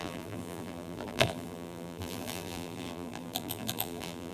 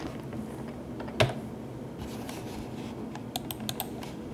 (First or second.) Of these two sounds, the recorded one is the second